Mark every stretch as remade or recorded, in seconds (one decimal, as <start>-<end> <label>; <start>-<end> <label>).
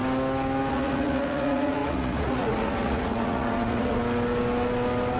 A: 0.0-0.7 recorded; 0.7-4.0 remade; 4.0-5.2 recorded